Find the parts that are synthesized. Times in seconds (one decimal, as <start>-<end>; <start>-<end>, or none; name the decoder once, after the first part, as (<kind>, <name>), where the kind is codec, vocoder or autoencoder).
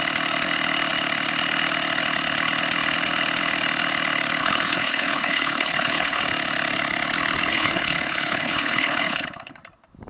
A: 4.4-6.2 (codec, HILCodec); 7.5-9.6